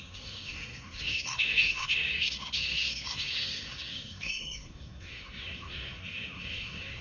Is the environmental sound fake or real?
fake